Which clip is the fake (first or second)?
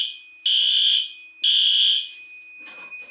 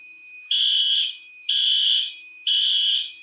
second